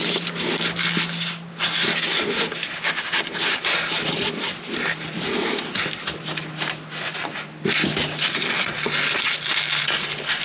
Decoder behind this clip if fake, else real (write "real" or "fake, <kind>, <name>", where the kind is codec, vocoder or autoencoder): real